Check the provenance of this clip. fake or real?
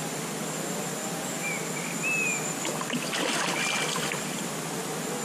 real